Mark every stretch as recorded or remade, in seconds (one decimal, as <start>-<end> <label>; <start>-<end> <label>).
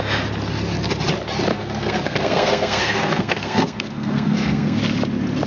0.0-1.5 recorded; 1.5-4.8 remade; 4.8-5.5 recorded